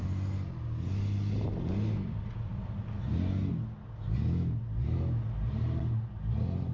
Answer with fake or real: real